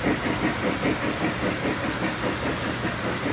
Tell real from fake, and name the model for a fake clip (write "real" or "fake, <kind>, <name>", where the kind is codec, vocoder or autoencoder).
real